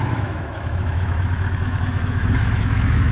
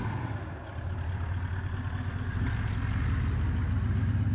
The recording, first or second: second